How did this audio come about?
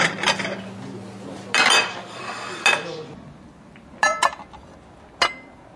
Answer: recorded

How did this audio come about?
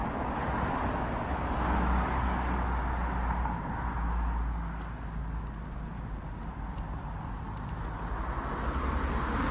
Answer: recorded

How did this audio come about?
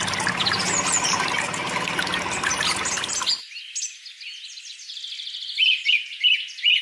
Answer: recorded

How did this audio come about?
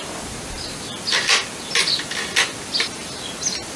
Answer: recorded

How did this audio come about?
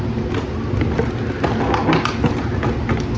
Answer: recorded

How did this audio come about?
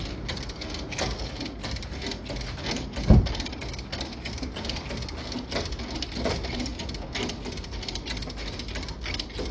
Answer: recorded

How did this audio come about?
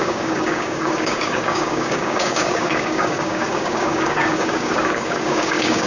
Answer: remade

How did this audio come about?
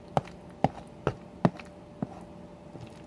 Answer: recorded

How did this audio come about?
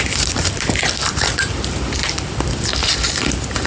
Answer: remade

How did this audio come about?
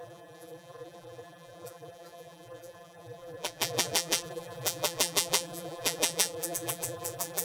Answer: remade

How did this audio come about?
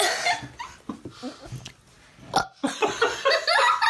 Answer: recorded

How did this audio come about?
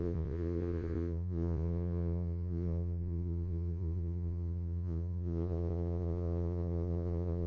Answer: remade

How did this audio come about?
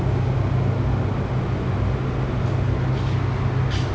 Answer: recorded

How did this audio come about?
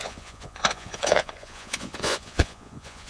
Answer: remade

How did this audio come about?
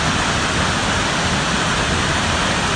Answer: recorded